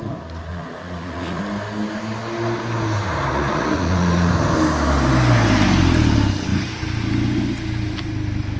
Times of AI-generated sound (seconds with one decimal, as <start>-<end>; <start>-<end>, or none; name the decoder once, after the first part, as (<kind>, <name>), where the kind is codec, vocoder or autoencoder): 0.5-1.4 (vocoder, Vocos); 3.3-4.3